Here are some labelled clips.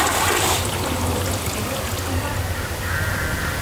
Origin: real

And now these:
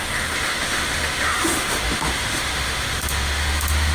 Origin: fake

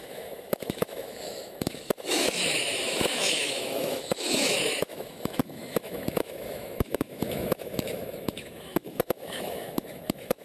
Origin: fake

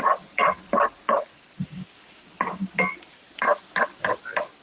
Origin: real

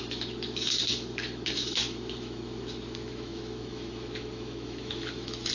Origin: fake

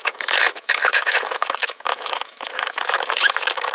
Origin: fake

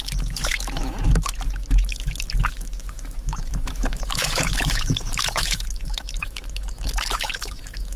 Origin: fake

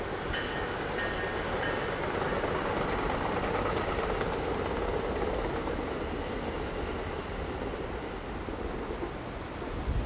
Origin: real